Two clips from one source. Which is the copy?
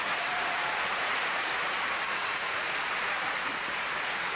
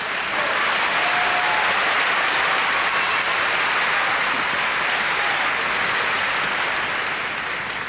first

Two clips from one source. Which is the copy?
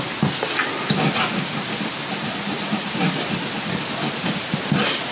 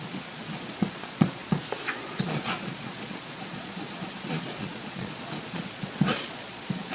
second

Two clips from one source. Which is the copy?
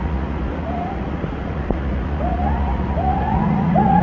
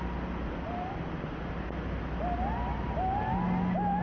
first